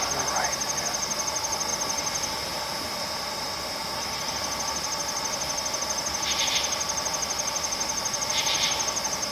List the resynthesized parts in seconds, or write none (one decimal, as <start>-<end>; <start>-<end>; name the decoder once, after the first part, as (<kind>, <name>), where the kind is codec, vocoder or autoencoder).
none